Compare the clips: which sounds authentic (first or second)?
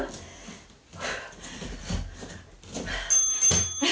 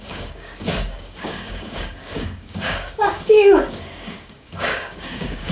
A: first